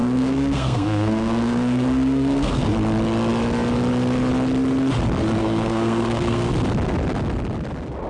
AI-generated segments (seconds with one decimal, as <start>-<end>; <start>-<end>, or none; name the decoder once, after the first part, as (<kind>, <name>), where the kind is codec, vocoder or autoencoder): 0.0-2.7 (codec, SNAC); 5.4-6.5

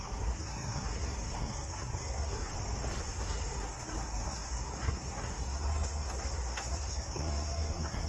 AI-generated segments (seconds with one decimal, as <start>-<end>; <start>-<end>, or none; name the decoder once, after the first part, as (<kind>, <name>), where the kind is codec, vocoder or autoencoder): 0.0-2.5 (codec, SNAC); 3.0-8.1

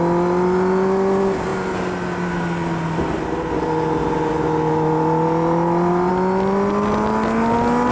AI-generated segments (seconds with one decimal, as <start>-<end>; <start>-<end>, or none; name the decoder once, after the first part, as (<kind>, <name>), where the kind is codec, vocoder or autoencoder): none

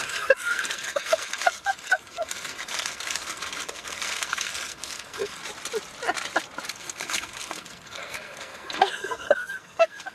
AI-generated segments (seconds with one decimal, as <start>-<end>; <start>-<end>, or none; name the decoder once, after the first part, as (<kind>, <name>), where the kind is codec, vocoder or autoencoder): 0.0-5.4 (codec, SNAC); 6.7-10.1

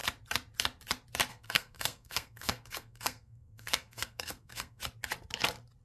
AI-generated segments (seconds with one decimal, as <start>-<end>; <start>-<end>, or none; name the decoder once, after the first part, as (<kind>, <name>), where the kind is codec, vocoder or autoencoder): 1.3-4.8 (codec, SNAC)

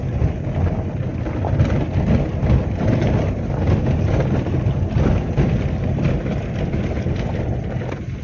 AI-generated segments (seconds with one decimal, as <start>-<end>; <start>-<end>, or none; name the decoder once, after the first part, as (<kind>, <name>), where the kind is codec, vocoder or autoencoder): none

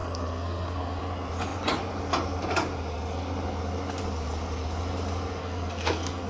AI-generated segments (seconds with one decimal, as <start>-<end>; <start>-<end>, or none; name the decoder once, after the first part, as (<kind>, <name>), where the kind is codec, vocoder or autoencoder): 0.0-1.0 (codec, SNAC); 5.4-6.3